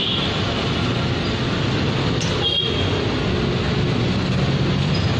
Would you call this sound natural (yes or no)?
yes